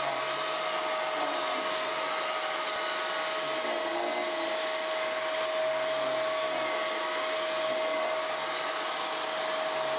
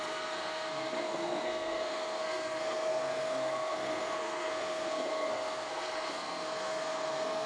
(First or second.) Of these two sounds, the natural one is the first